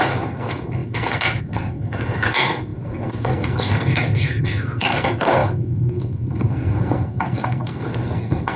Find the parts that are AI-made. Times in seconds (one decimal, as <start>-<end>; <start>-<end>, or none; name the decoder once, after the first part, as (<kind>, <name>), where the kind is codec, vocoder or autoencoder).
0.0-8.6 (codec, SNAC)